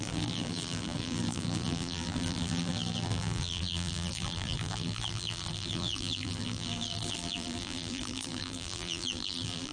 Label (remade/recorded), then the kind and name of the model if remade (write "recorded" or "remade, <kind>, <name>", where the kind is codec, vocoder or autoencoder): remade, vocoder, BigVGAN v2